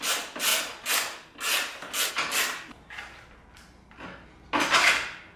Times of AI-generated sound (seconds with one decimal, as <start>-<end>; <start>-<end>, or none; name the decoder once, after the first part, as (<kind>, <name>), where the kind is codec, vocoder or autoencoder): none